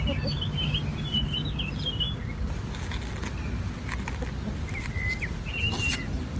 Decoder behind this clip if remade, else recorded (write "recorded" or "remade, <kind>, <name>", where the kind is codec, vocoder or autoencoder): recorded